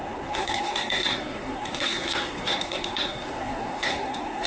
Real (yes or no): no